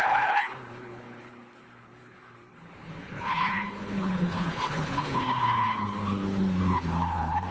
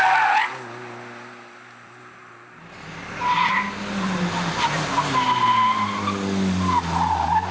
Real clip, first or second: second